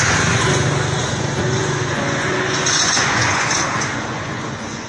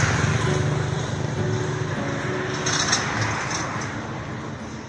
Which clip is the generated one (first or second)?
first